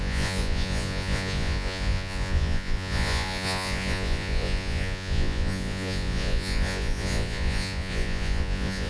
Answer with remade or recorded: remade